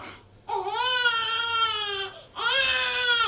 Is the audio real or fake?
real